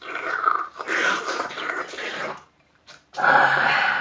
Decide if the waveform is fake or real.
fake